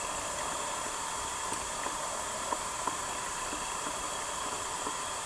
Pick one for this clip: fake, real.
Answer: fake